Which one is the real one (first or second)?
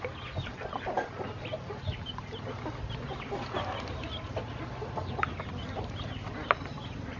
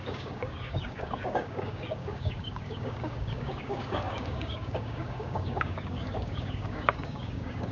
first